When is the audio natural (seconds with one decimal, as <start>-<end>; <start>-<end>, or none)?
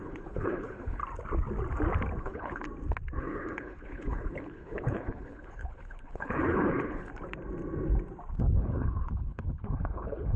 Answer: 1.0-2.2; 2.6-3.2; 7.1-8.4